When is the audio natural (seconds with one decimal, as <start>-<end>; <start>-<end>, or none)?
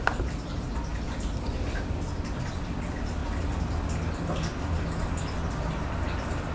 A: 0.0-6.5